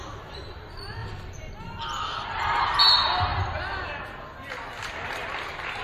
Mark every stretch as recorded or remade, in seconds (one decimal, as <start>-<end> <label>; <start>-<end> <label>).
0.0-1.0 recorded; 1.0-2.9 remade; 2.9-3.3 recorded; 3.3-4.1 remade; 4.1-5.8 recorded